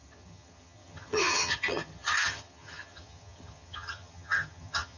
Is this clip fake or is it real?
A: fake